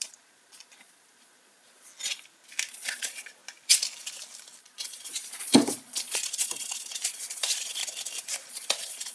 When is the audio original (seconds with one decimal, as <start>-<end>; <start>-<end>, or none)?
1.9-2.7; 3.4-4.6; 7.8-8.5

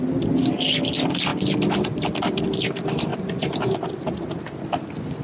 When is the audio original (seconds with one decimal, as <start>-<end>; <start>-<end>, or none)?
0.0-5.2

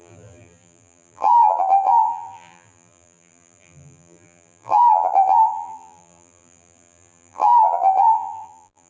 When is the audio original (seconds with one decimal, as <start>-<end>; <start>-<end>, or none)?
none

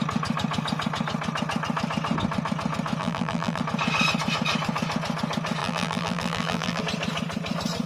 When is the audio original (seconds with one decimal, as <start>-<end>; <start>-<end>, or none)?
0.0-3.0; 3.6-5.6; 6.8-7.9

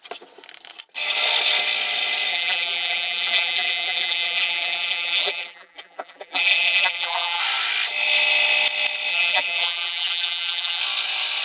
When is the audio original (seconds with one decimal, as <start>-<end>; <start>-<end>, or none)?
0.0-2.3; 7.4-9.1; 10.8-11.4

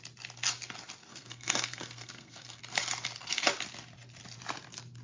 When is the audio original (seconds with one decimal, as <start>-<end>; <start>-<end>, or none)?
0.0-1.1; 2.6-5.0